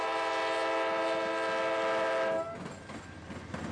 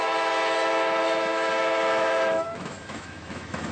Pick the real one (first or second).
first